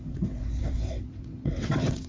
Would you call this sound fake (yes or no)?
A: yes